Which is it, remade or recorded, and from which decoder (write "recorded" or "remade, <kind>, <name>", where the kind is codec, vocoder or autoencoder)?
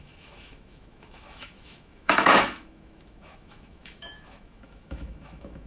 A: remade, autoencoder, DAC-VAE